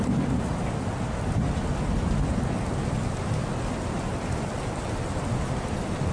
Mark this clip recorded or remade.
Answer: recorded